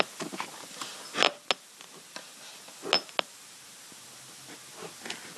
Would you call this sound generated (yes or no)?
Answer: no